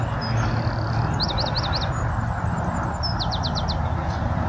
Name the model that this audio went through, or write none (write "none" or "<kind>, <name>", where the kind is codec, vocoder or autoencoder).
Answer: none